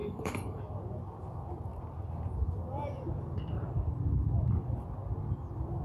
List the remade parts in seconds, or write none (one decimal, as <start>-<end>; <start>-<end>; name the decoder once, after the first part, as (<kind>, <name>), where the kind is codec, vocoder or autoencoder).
0.0-0.6 (codec, DAC)